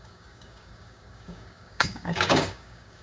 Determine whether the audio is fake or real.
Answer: fake